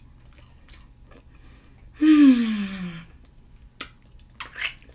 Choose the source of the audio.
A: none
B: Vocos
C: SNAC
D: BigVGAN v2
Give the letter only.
A